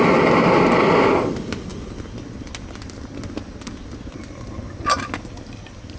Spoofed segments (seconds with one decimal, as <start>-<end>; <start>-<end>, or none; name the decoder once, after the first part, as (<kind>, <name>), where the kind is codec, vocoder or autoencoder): none